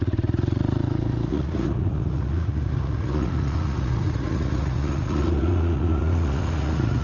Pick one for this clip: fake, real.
fake